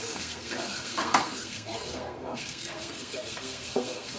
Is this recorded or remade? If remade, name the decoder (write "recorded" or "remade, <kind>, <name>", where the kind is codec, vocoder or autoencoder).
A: remade, codec, SNAC